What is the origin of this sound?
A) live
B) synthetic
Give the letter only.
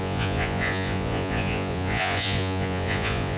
B